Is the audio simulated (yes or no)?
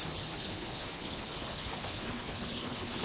yes